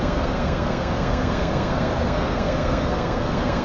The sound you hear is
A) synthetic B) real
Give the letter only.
A